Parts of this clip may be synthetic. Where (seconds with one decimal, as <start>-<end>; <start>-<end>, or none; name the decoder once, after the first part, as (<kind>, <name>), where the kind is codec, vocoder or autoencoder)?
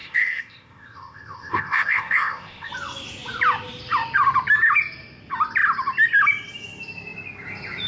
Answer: 0.0-2.7 (codec, ZipCodec)